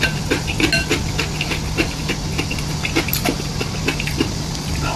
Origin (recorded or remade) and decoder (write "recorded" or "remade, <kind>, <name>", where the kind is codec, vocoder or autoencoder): recorded